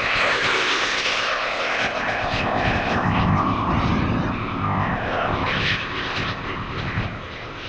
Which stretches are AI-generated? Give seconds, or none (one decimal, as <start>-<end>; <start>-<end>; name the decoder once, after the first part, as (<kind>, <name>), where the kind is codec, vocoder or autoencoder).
0.0-3.7 (codec, ZipCodec); 4.3-7.7